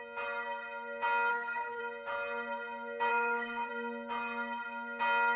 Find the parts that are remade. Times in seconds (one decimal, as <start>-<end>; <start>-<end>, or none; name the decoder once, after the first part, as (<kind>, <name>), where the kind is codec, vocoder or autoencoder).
1.3-1.8 (codec, SNAC); 3.1-3.7